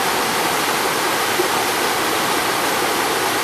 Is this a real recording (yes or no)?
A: yes